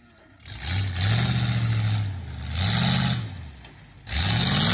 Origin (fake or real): real